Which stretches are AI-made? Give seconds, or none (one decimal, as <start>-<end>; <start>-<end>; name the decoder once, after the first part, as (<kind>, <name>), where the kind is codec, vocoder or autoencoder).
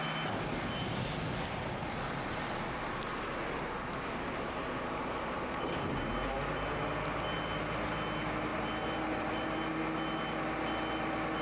8.5-9.7 (vocoder, BigVGAN v2)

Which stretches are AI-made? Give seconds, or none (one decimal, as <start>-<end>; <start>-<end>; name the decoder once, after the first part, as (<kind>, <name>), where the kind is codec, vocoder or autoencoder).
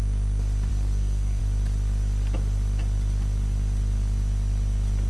0.7-1.4 (codec, SNAC)